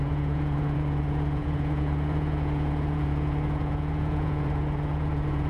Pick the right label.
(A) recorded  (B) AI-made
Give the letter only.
B